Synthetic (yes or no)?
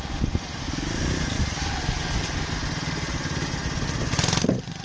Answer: no